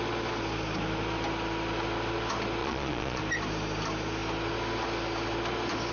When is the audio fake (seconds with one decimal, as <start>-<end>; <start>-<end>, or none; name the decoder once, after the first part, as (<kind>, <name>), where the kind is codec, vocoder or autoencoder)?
2.6-3.2 (vocoder, Vocos)